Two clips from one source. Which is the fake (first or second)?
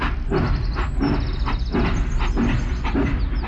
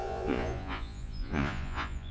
second